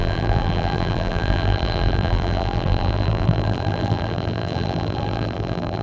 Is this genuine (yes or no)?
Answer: no